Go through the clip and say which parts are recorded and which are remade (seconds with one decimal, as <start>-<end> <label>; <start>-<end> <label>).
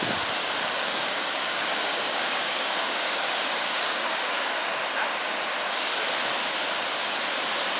0.0-0.4 recorded; 0.4-4.8 remade; 4.8-7.8 recorded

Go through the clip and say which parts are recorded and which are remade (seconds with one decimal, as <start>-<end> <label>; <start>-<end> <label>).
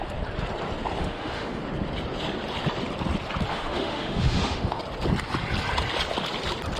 0.0-1.0 recorded; 1.0-1.6 remade; 1.6-3.5 recorded; 3.5-4.8 remade; 4.8-6.8 recorded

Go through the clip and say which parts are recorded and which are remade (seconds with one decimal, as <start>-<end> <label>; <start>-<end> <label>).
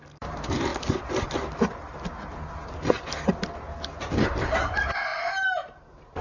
0.0-0.7 remade; 0.7-4.4 recorded; 4.4-6.2 remade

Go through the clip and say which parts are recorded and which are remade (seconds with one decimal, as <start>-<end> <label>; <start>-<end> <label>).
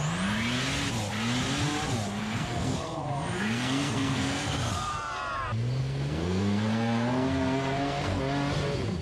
0.0-2.2 recorded; 2.2-4.9 remade; 4.9-5.8 recorded; 5.8-8.2 remade; 8.2-9.0 recorded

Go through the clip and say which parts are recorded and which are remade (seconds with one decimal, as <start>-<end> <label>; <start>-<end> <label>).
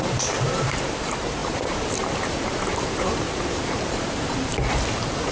0.0-5.3 remade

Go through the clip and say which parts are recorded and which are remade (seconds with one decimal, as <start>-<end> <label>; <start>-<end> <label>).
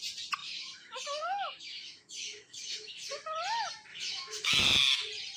0.0-0.4 recorded; 0.4-3.1 remade; 3.1-3.9 recorded; 3.9-4.5 remade; 4.5-5.4 recorded